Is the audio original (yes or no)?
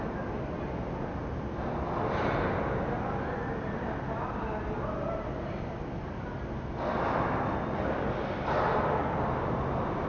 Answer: yes